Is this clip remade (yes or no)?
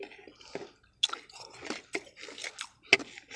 no